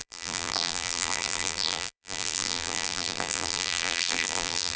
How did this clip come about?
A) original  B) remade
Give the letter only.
B